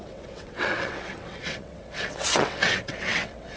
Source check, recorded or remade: remade